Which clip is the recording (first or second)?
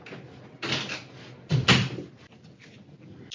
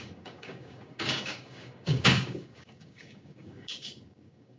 first